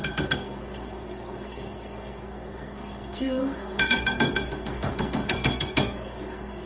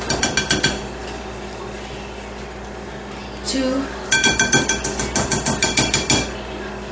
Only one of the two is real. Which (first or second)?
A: second